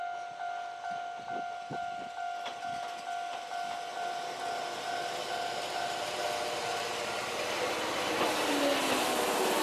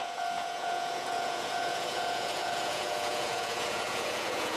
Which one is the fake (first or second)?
second